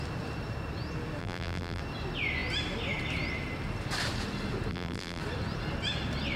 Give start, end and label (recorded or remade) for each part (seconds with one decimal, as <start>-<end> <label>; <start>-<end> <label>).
0.0-1.2 recorded; 1.2-1.8 remade; 1.8-4.7 recorded; 4.7-5.2 remade; 5.2-6.4 recorded